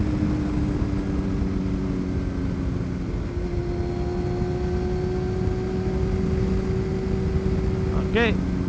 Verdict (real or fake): real